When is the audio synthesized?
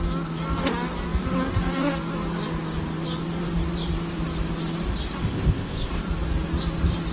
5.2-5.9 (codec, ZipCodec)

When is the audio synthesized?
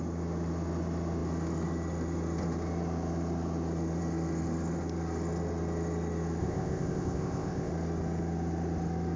6.4-7.7 (codec, ZipCodec)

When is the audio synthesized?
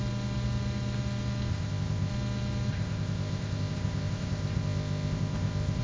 1.5-2.1 (codec, ZipCodec); 2.7-5.8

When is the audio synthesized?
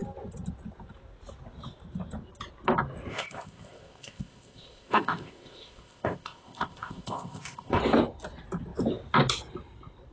3.1-7.8 (codec, ZipCodec)